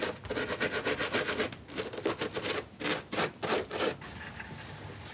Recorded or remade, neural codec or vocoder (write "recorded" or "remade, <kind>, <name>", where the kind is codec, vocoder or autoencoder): recorded